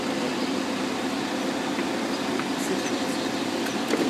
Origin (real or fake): real